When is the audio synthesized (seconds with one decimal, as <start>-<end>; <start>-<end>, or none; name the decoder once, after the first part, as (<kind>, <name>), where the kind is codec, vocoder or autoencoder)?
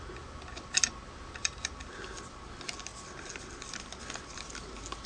none